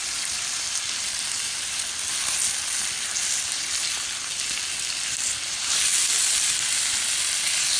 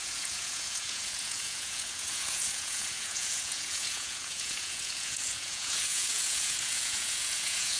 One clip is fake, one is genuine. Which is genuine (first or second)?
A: first